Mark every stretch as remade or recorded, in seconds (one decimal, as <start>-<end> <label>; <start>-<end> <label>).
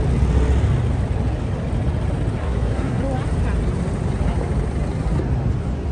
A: 0.0-2.4 recorded; 2.4-3.0 remade; 3.0-5.9 recorded